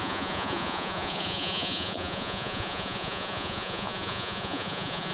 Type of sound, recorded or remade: remade